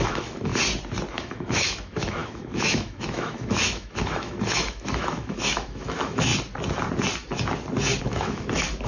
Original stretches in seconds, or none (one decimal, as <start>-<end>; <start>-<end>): 0.5-1.1; 6.3-8.0